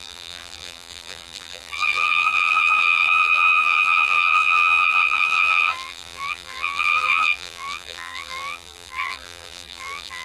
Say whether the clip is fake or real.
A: fake